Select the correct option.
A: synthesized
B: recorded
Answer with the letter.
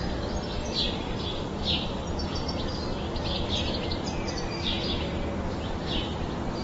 B